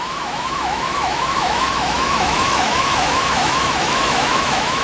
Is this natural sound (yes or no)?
no